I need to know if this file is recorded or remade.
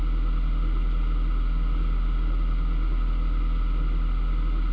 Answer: recorded